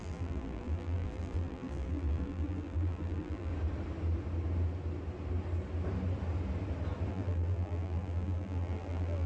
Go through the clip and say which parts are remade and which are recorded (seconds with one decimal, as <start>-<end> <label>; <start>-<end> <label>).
0.0-3.5 remade; 3.5-7.1 recorded; 7.1-9.3 remade